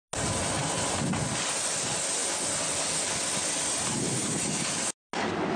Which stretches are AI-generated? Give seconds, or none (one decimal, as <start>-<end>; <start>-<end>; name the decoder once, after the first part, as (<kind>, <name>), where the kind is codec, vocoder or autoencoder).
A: 0.6-1.2 (vocoder, BigVGAN v2)